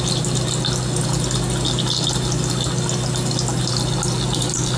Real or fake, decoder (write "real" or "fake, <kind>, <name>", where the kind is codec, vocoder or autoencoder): real